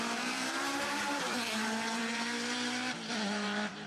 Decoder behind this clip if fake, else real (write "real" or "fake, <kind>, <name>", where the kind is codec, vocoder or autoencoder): fake, vocoder, BigVGAN v2